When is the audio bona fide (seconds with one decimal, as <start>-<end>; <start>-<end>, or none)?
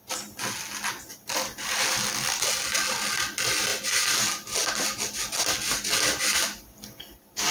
0.0-1.1; 2.0-7.5